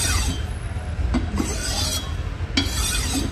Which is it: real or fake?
real